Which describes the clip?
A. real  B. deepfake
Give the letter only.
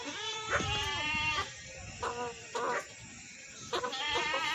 B